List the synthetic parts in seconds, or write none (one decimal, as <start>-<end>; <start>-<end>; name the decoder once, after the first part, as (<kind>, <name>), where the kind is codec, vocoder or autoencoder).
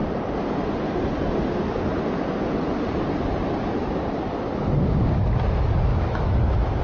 5.9-6.8 (autoencoder, DAC-VAE)